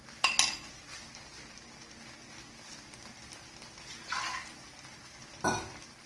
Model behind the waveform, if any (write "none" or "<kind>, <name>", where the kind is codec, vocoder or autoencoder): none